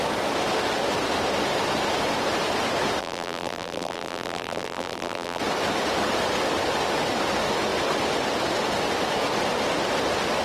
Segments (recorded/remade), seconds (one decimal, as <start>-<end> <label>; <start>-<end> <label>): 0.0-3.0 recorded; 3.0-5.4 remade; 5.4-10.4 recorded